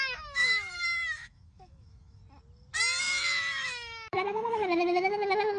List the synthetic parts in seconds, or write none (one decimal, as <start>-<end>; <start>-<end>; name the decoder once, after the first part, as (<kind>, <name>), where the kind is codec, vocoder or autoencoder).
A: 0.0-2.2 (autoencoder, DAC-VAE); 3.0-5.6